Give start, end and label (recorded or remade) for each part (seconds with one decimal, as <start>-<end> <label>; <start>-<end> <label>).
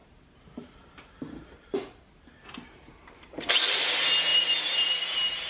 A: 0.0-2.3 remade; 2.3-4.3 recorded; 4.3-4.9 remade; 4.9-5.5 recorded